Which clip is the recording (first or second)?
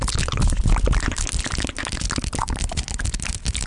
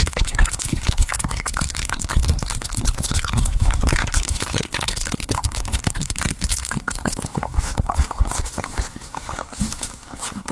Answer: first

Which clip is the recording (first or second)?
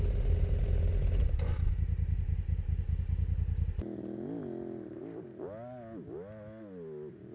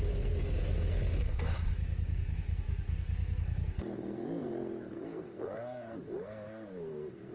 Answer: first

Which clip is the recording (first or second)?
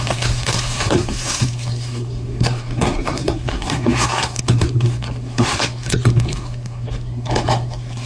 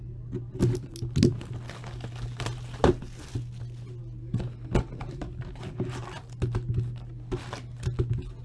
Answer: second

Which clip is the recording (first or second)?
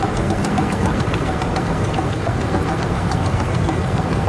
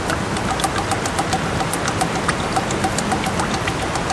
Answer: second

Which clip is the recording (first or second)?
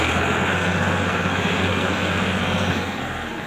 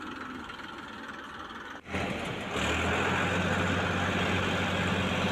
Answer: second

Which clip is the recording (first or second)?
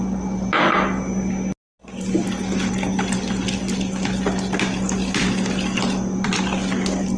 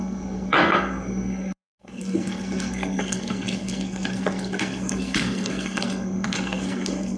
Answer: first